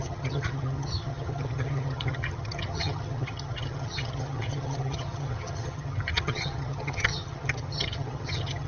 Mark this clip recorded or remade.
remade